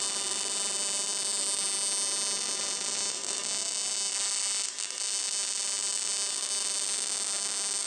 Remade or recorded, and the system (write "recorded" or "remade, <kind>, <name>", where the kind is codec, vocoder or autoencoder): recorded